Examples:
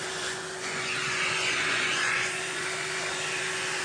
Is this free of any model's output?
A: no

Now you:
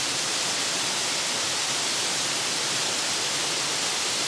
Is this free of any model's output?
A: yes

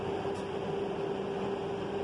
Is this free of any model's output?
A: yes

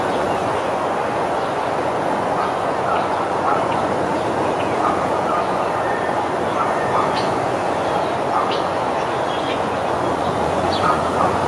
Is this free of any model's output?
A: no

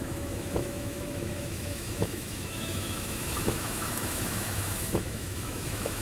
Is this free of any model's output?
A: no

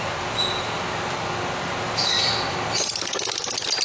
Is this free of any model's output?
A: yes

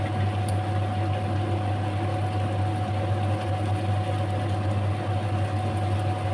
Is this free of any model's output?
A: yes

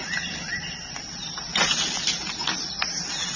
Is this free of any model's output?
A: yes